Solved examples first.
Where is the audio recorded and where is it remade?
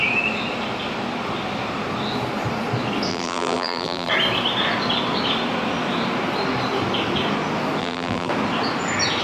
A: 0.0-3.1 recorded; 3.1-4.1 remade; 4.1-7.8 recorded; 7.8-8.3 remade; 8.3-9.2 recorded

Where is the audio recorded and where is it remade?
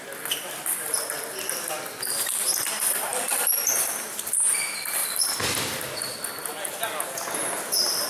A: 0.0-8.1 recorded